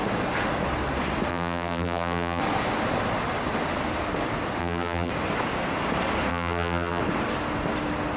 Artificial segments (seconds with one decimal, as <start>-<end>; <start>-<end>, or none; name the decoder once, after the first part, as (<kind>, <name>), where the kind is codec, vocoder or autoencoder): 1.3-2.4 (vocoder, BigVGAN v2); 4.6-5.1; 6.3-7.0